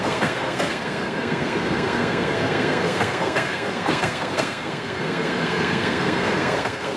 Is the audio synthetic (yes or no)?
yes